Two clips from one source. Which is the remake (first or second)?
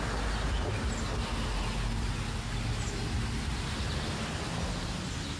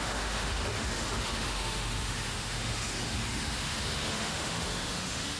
second